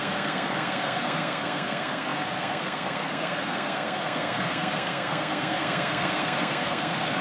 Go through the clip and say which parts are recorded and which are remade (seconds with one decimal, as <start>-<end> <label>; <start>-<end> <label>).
0.0-7.2 remade